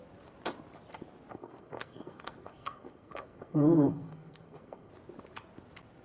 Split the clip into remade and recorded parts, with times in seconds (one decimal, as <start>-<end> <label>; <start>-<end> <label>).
0.0-1.3 recorded; 1.3-4.9 remade; 4.9-6.0 recorded